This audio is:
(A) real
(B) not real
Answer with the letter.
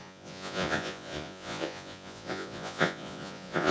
B